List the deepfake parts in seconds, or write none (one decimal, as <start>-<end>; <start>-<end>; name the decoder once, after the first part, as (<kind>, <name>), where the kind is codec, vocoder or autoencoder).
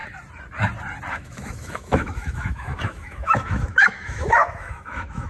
1.1-5.3 (autoencoder, DAC-VAE)